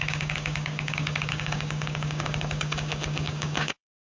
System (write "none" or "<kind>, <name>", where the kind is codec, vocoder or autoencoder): codec, DAC